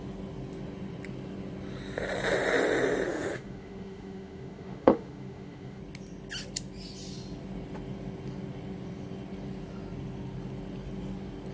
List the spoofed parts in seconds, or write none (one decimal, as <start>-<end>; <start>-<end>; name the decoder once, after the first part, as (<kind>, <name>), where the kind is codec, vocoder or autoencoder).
3.1-5.8 (autoencoder, DAC-VAE)